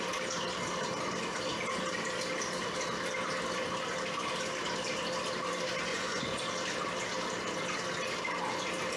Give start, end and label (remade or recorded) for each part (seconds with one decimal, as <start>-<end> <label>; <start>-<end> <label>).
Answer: 0.0-5.9 recorded; 5.9-6.4 remade; 6.4-9.0 recorded